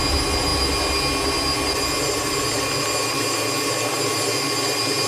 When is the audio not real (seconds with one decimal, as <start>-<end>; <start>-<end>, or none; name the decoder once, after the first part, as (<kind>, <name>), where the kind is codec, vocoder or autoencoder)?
none